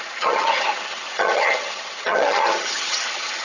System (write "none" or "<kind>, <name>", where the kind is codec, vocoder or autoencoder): vocoder, HiFi-GAN